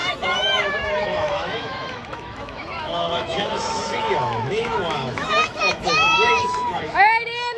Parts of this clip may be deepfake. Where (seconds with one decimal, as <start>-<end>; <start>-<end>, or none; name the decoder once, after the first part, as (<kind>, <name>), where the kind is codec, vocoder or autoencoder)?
0.0-7.6 (autoencoder, DAC-VAE)